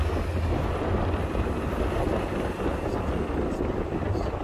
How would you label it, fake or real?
real